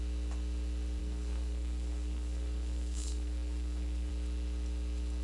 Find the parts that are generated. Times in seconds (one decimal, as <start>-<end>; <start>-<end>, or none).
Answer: 1.0-4.1